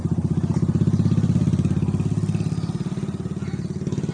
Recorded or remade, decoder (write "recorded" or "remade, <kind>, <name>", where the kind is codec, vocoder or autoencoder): recorded